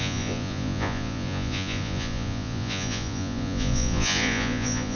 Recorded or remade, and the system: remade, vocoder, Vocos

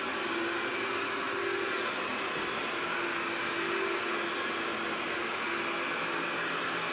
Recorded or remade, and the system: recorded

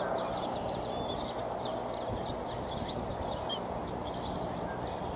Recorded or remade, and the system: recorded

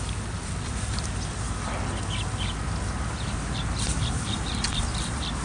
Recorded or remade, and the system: recorded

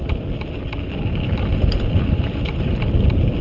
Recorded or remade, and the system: recorded